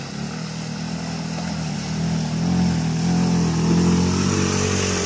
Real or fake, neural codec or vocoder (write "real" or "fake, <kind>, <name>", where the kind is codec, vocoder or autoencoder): real